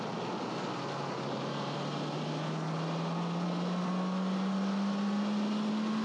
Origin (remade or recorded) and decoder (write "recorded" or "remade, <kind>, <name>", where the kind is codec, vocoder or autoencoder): recorded